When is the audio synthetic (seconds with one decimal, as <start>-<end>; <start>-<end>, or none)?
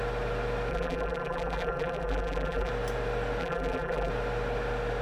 0.7-2.7; 3.4-4.1